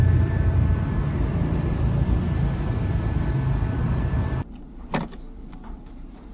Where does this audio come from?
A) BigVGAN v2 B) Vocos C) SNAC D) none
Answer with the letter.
A